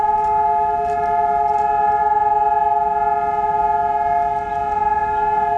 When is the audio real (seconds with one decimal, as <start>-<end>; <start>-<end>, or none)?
0.0-5.6